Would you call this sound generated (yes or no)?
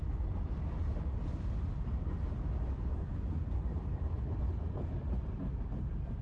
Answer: no